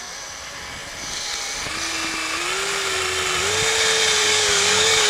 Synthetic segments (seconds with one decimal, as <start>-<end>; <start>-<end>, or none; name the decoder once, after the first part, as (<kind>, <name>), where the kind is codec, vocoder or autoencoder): 4.2-5.1 (codec, DAC)